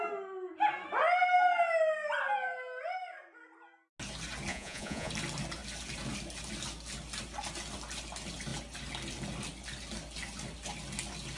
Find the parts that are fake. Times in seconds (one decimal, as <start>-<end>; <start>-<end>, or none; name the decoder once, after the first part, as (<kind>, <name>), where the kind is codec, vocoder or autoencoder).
4.5-5.1 (vocoder, Vocos)